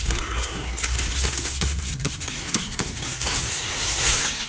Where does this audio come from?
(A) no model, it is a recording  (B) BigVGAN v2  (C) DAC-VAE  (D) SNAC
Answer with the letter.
D